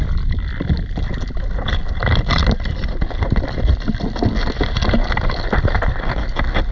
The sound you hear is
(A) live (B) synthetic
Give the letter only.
A